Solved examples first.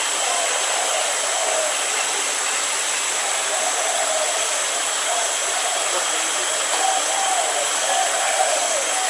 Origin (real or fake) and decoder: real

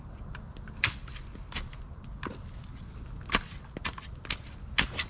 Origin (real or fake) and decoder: real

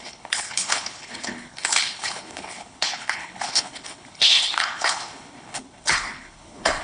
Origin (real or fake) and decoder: fake, codec, HILCodec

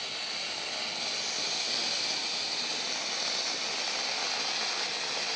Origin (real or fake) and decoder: real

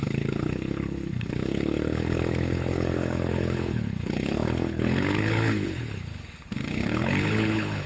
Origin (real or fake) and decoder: fake, codec, HILCodec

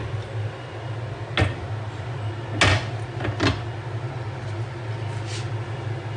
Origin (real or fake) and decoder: real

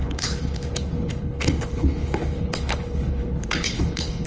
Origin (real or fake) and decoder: fake, codec, HILCodec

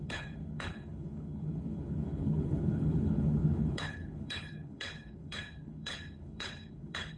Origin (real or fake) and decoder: fake, codec, HILCodec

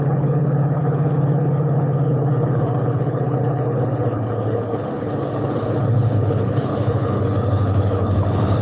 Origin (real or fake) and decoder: fake, codec, HILCodec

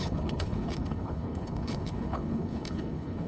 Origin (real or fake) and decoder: fake, codec, HILCodec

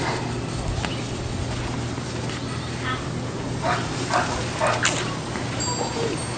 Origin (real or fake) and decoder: real